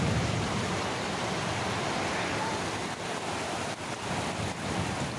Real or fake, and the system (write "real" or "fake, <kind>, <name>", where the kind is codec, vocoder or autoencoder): fake, vocoder, BigVGAN v2